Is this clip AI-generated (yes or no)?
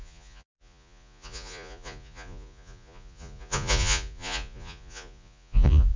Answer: yes